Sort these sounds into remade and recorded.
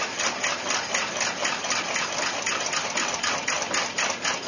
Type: recorded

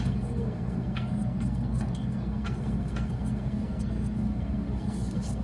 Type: remade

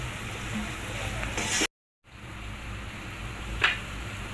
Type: recorded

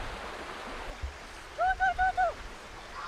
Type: recorded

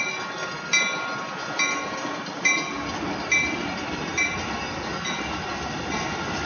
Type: recorded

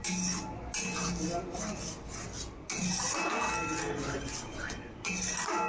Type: recorded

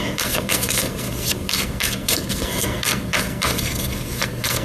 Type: remade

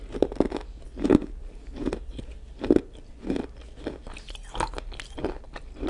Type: recorded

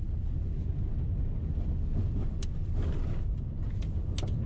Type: recorded